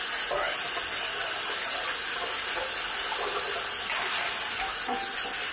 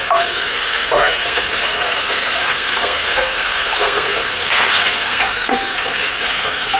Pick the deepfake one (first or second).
second